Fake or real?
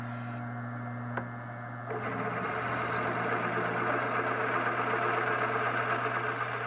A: real